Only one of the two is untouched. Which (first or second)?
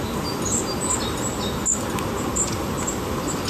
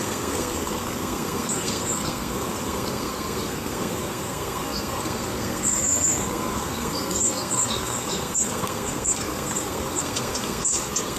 first